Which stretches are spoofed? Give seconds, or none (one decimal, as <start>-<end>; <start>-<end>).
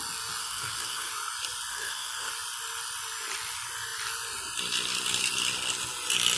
0.4-1.1; 1.7-2.3